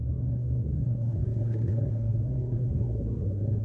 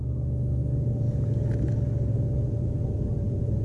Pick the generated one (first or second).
first